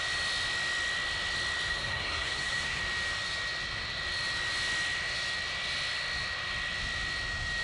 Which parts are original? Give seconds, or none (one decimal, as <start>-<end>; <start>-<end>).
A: 0.0-1.7; 2.8-7.6